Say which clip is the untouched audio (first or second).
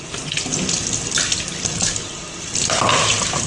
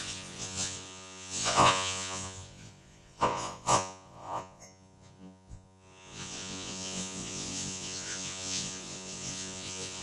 first